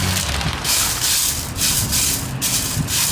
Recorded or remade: recorded